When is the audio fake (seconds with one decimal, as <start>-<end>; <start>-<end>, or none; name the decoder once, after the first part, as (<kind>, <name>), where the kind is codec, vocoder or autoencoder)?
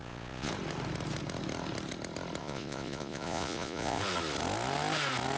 0.0-0.5 (vocoder, Vocos); 2.4-4.0